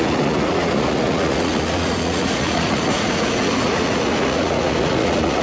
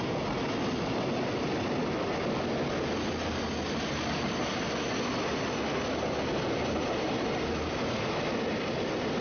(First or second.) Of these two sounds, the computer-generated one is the first